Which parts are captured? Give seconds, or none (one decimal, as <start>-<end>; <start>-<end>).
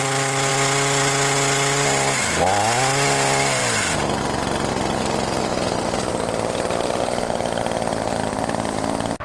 0.0-9.2